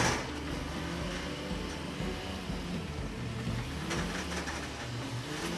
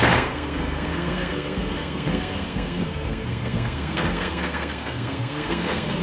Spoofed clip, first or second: second